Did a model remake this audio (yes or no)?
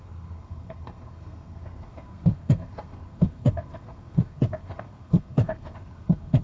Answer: yes